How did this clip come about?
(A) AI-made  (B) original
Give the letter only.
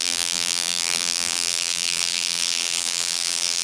A